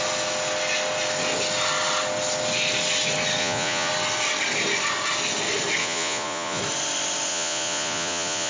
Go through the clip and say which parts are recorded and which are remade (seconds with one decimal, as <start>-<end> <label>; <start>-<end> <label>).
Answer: 0.0-3.4 recorded; 3.4-3.9 remade; 3.9-5.8 recorded; 5.8-6.6 remade; 6.6-7.3 recorded; 7.3-8.5 remade